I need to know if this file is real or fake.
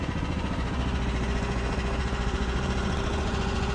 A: fake